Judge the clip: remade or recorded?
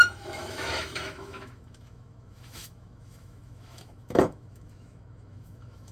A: remade